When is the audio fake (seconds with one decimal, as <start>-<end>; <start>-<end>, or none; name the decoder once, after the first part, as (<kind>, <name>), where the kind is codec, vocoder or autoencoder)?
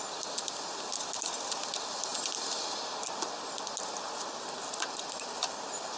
none